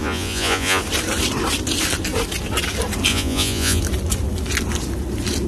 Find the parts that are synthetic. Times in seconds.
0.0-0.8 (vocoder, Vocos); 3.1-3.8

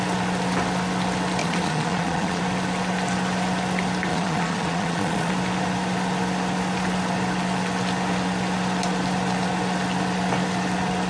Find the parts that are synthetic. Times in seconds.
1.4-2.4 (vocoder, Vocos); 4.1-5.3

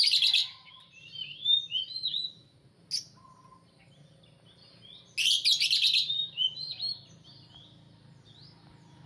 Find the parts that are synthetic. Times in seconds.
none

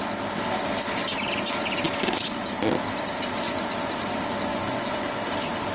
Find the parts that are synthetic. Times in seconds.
4.5-5.2 (vocoder, Vocos)